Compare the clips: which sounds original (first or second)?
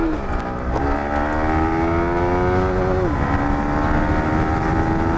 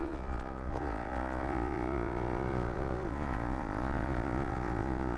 first